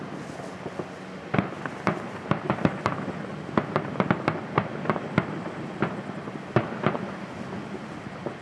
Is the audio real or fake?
real